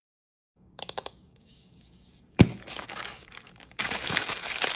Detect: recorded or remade remade